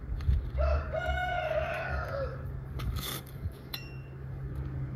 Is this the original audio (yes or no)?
no